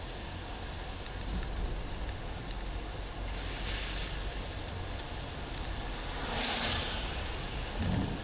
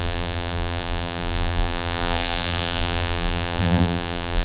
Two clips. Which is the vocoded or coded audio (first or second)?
second